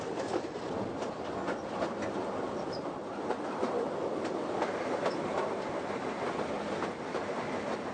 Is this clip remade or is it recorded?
recorded